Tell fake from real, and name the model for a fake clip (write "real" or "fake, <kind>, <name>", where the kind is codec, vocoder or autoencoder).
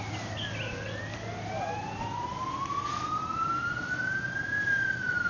real